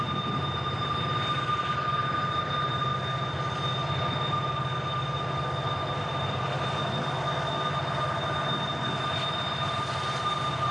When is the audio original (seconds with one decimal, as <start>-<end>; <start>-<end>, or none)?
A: 2.9-6.0; 6.8-9.3